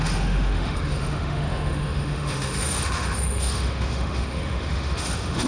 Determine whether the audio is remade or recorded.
remade